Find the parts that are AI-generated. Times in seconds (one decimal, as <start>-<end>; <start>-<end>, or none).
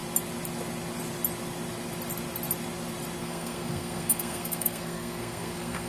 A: 3.2-5.9